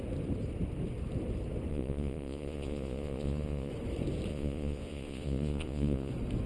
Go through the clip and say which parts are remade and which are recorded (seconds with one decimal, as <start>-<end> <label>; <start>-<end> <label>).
0.0-1.7 recorded; 1.7-3.7 remade; 3.7-4.3 recorded; 4.3-6.1 remade; 6.1-6.5 recorded